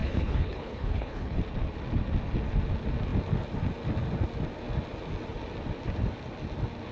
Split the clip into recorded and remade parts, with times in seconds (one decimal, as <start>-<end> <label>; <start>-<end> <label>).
0.0-1.4 remade; 1.4-6.9 recorded